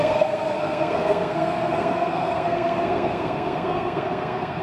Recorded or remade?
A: remade